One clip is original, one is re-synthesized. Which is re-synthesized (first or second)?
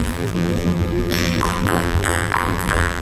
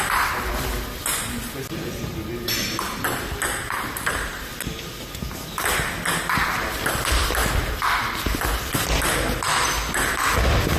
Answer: first